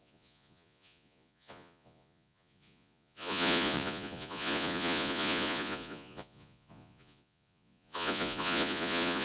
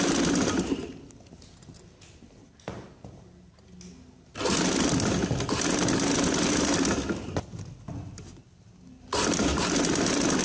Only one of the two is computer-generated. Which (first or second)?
first